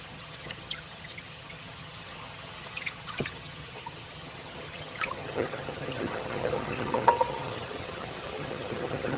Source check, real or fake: fake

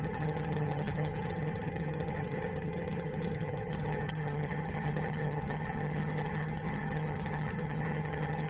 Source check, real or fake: fake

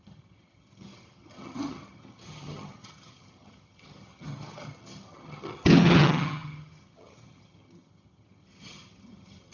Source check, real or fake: fake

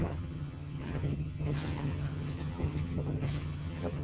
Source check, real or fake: fake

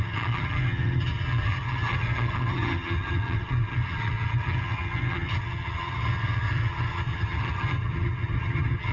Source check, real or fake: fake